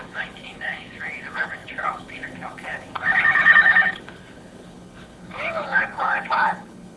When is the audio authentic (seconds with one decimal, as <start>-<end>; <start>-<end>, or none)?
none